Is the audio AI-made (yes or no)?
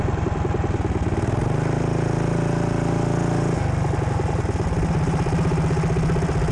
no